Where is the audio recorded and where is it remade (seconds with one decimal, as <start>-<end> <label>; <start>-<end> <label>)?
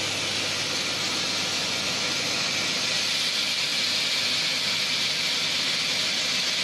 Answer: 0.0-1.6 recorded; 1.6-2.5 remade; 2.5-6.6 recorded